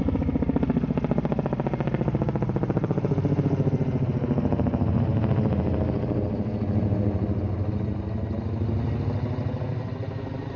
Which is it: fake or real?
real